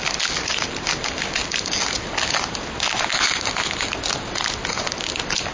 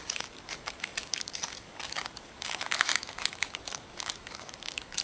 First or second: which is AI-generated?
second